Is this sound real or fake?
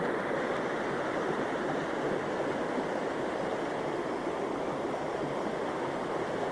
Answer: real